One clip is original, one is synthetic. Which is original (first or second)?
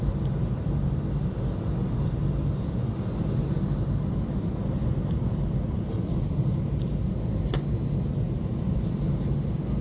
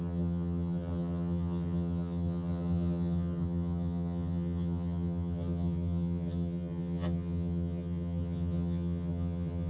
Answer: first